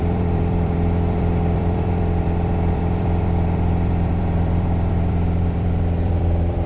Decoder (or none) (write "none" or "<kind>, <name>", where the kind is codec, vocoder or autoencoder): vocoder, BigVGAN v2